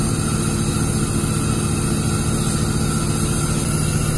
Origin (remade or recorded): recorded